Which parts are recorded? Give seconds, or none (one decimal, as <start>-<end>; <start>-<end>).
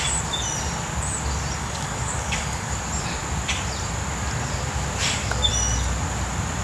0.0-1.6; 2.8-6.6